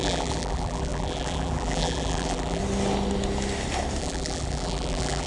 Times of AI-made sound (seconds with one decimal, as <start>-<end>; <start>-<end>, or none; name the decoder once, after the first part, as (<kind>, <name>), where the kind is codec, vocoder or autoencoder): 0.0-2.6 (vocoder, BigVGAN v2); 4.0-5.3

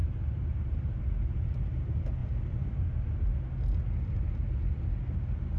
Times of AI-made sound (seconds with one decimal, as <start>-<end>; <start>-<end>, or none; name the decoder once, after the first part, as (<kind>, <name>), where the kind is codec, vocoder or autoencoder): 0.0-1.5 (vocoder, BigVGAN v2); 2.2-2.8

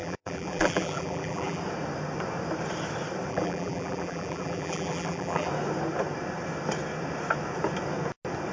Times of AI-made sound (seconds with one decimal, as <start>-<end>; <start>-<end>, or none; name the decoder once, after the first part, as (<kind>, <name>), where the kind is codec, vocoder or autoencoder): 0.0-1.6 (vocoder, BigVGAN v2); 3.3-5.5

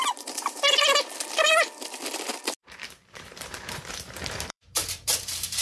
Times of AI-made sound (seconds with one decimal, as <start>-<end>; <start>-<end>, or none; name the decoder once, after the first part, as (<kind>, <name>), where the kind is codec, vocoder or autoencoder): 0.0-0.7 (vocoder, BigVGAN v2); 2.6-5.6

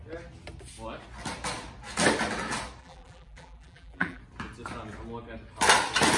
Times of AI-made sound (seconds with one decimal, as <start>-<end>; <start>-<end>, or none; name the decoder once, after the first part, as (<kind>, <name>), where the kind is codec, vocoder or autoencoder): 2.8-4.2 (vocoder, BigVGAN v2)